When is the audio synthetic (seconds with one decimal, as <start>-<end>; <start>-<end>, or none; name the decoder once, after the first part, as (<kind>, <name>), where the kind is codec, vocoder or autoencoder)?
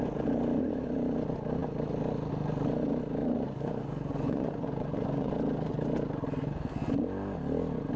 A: 3.2-5.3 (vocoder, Vocos)